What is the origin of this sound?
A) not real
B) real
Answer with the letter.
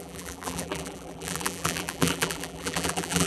A